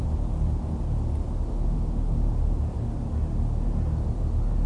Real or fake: real